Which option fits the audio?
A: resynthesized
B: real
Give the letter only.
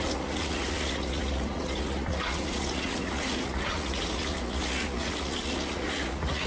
A